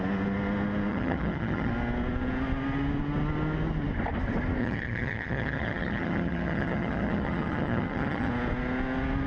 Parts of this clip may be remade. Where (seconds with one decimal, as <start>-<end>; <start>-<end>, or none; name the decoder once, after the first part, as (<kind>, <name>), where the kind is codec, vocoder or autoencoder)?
0.9-1.7 (vocoder, HiFi-GAN); 4.6-8.3